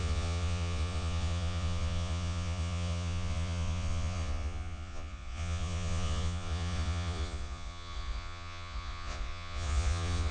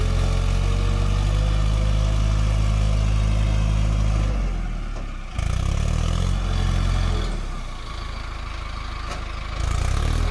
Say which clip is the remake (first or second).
first